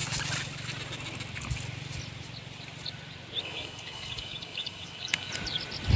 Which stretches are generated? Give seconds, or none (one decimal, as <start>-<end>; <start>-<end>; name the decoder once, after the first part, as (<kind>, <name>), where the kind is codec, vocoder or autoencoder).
3.4-5.3 (codec, DAC)